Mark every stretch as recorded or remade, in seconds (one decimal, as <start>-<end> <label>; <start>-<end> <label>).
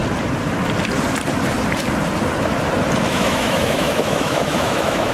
0.0-3.1 recorded; 3.1-5.1 remade